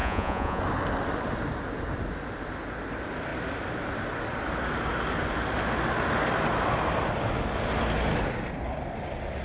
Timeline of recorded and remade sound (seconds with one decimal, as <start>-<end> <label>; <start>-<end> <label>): 0.0-0.6 remade; 0.6-9.4 recorded